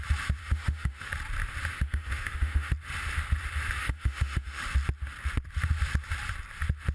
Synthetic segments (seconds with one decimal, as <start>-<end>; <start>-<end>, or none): 0.4-1.1; 1.7-2.7; 3.8-4.6